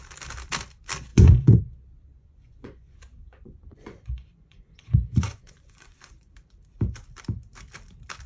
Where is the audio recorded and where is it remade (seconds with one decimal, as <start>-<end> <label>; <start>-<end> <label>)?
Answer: 0.0-1.1 recorded; 1.1-1.6 remade; 1.6-2.1 recorded; 2.1-6.3 remade; 6.3-8.3 recorded